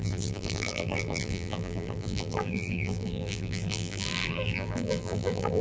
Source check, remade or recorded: remade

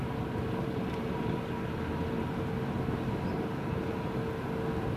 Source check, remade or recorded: recorded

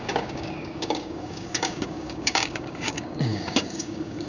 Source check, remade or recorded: remade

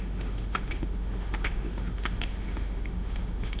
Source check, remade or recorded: remade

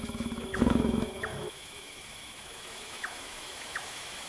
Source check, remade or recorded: remade